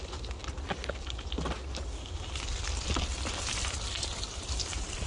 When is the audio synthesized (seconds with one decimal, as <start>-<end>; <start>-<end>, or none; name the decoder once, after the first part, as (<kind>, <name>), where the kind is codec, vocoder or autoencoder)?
0.0-0.4 (vocoder, BigVGAN v2); 3.5-5.1